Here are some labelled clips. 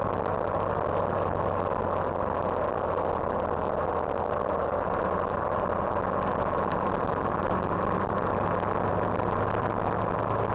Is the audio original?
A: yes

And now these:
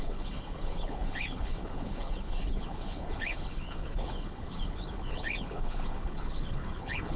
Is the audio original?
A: no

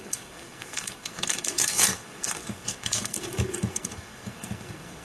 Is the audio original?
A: no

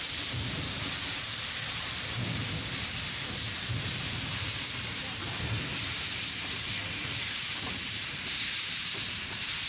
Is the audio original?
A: no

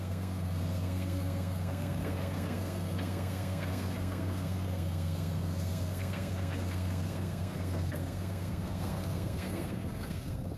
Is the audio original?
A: no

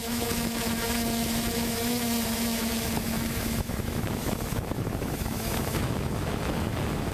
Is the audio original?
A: no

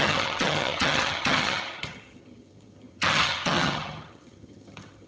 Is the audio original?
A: no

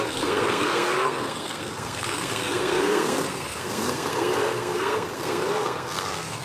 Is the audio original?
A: no